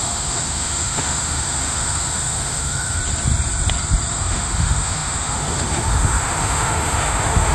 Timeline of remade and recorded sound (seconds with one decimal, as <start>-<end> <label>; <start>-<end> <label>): 0.0-3.0 remade; 3.0-4.1 recorded; 4.1-7.5 remade